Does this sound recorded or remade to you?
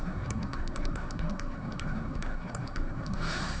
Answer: remade